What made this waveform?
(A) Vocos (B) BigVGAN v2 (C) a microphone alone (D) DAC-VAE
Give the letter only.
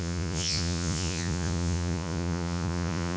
A